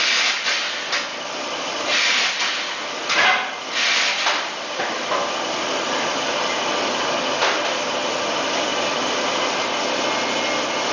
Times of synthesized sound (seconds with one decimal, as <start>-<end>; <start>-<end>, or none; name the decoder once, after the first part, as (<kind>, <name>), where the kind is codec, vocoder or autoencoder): 1.1-6.2 (vocoder, BigVGAN v2); 8.7-9.8